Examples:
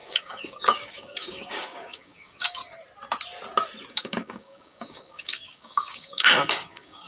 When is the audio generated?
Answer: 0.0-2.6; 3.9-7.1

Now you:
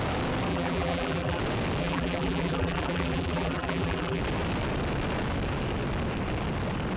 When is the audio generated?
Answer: 0.5-1.4; 1.8-4.2